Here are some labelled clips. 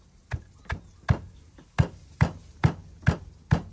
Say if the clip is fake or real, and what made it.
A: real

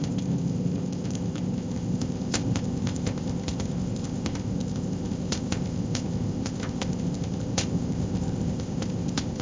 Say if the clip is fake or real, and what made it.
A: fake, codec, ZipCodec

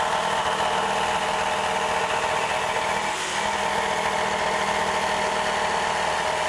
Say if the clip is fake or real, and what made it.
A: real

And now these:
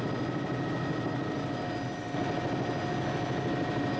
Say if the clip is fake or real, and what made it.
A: real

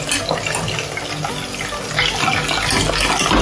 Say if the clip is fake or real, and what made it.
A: real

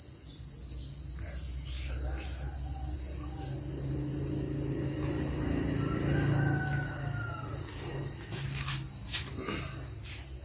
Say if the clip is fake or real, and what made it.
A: real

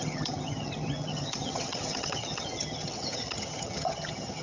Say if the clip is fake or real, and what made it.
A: fake, vocoder, HiFi-GAN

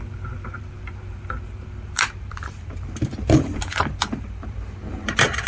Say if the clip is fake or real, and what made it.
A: fake, vocoder, BigVGAN v2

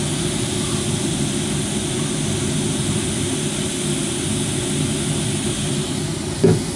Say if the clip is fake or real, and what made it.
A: real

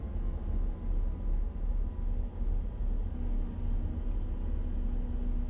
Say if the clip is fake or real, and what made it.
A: real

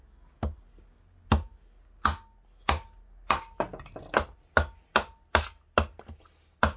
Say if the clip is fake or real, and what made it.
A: real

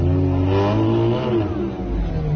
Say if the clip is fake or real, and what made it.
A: real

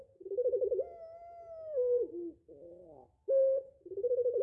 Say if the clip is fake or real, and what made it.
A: real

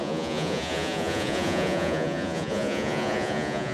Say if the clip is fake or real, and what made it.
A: fake, vocoder, Vocos